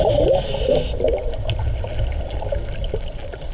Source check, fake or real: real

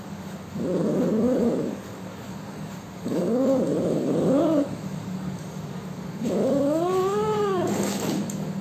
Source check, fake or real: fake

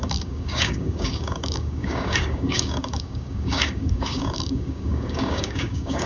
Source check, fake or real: fake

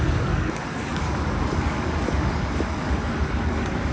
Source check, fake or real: fake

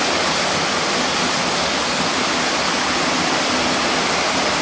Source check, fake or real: real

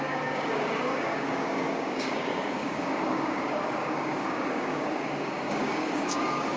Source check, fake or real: fake